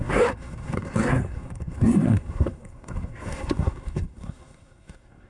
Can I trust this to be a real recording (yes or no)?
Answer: no